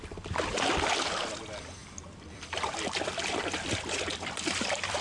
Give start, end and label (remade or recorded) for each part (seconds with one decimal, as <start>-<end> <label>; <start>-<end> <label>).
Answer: 0.0-1.8 recorded; 1.8-5.0 remade